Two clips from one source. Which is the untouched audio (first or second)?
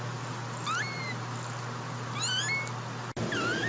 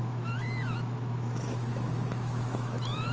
first